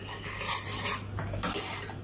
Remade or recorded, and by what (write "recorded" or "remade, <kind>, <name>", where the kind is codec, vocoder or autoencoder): recorded